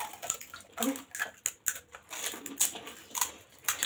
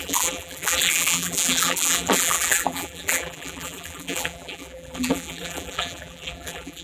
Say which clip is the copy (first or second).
second